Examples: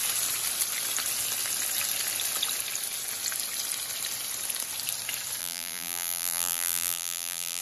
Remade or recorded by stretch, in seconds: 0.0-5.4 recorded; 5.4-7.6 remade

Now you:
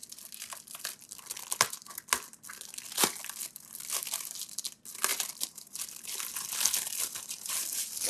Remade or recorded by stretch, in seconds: 0.0-1.7 remade; 1.7-5.1 recorded; 5.1-7.5 remade; 7.5-8.1 recorded

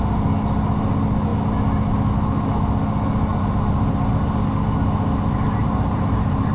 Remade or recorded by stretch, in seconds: 0.0-3.3 recorded; 3.3-4.4 remade; 4.4-5.6 recorded; 5.6-6.5 remade

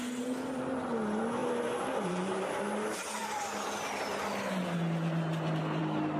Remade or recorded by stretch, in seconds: 0.0-1.4 recorded; 1.4-2.6 remade; 2.6-6.2 recorded

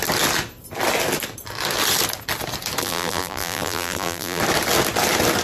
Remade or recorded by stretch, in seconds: 0.0-2.8 recorded; 2.8-4.4 remade; 4.4-5.4 recorded